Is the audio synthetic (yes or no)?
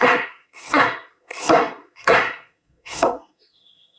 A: yes